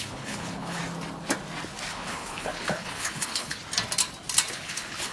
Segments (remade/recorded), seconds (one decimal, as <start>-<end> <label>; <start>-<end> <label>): 0.0-0.8 remade; 0.8-1.9 recorded; 1.9-3.6 remade; 3.6-4.5 recorded; 4.5-5.1 remade

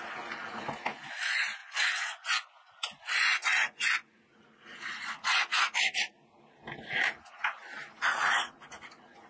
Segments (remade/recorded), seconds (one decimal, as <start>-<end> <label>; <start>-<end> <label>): 0.0-1.6 recorded; 1.6-2.7 remade; 2.7-3.3 recorded; 3.3-3.9 remade; 3.9-9.3 recorded

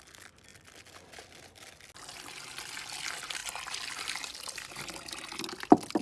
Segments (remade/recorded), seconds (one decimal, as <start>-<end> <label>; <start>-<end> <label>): 0.0-3.4 recorded; 3.4-4.7 remade; 4.7-6.0 recorded

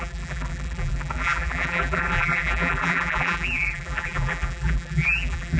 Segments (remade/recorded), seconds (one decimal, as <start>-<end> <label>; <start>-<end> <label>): 0.0-5.6 remade

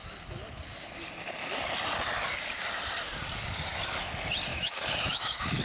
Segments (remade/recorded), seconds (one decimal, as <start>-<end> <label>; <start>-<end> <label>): 0.0-4.5 recorded; 4.5-5.6 remade

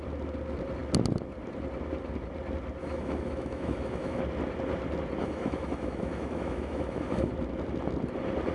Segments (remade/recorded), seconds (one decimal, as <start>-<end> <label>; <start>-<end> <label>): 0.0-2.8 recorded; 2.8-4.2 remade; 4.2-5.2 recorded; 5.2-7.3 remade; 7.3-8.5 recorded

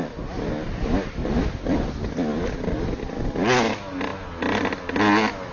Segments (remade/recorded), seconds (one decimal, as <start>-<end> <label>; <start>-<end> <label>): 0.0-1.2 recorded; 1.2-1.9 remade; 1.9-2.3 recorded; 2.3-3.0 remade; 3.0-5.5 recorded

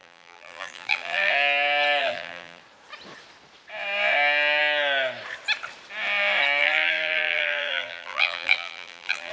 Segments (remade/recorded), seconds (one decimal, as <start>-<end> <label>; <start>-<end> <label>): 0.0-1.3 remade; 1.3-2.0 recorded; 2.0-2.6 remade; 2.6-6.6 recorded; 6.6-9.3 remade